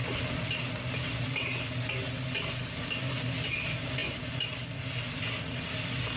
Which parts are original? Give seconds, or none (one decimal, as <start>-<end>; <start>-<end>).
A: 0.0-6.2